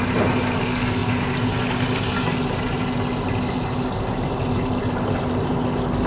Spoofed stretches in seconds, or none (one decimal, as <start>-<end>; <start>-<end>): none